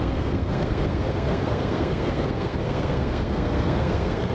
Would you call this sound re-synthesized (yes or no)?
yes